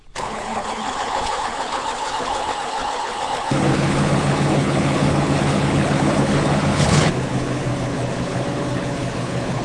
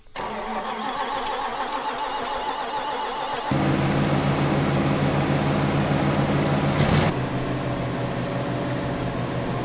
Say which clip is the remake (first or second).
first